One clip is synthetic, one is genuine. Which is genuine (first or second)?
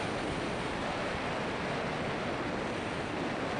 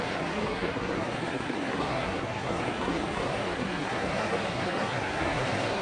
first